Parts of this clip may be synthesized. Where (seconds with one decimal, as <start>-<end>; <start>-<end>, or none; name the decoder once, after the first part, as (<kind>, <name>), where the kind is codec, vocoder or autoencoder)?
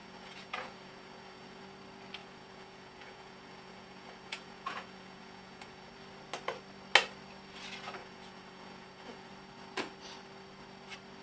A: 0.0-1.6 (vocoder, Vocos); 2.2-5.9; 8.0-9.3